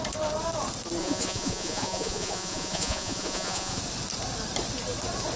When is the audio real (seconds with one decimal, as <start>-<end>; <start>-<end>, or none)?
0.0-1.0; 3.8-5.4